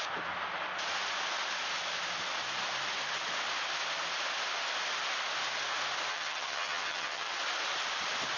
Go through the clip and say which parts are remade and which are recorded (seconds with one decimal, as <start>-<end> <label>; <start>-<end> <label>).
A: 0.0-6.1 recorded; 6.1-7.4 remade; 7.4-8.4 recorded